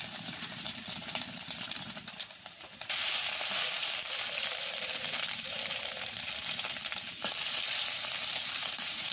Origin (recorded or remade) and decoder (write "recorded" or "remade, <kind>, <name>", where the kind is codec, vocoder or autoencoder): remade, vocoder, BigVGAN v2